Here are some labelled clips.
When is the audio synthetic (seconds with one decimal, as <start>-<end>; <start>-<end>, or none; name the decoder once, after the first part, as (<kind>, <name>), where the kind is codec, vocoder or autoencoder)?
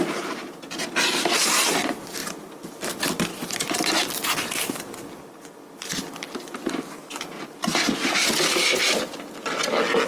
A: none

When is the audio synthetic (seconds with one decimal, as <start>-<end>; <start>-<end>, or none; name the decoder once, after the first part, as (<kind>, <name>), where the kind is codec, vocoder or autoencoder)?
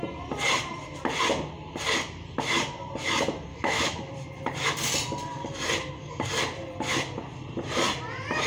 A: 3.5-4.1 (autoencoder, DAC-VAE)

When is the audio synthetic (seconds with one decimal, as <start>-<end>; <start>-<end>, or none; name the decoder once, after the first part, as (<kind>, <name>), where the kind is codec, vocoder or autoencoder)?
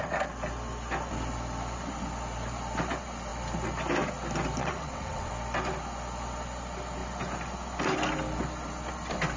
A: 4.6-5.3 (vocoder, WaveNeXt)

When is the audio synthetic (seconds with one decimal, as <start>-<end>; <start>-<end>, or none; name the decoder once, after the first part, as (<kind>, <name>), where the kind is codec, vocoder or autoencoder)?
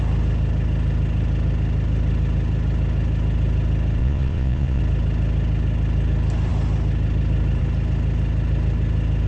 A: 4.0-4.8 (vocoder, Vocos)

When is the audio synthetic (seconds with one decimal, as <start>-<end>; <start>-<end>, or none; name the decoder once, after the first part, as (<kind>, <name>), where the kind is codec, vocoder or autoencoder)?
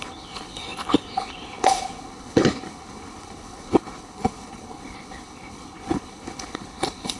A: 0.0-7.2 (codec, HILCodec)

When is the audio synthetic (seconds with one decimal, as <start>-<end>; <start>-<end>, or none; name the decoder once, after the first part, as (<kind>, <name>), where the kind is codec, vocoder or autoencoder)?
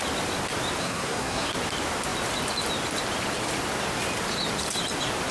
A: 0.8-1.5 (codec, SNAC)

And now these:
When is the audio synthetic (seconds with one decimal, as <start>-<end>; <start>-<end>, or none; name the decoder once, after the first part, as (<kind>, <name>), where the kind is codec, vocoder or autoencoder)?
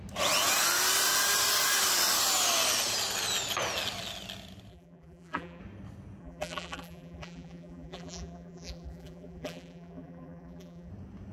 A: 4.7-5.6 (vocoder, BigVGAN v2); 6.2-10.9